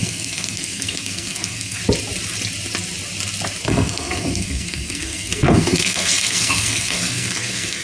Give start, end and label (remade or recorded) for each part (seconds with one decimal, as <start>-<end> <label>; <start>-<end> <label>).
0.0-1.8 remade; 1.8-3.6 recorded; 3.6-7.8 remade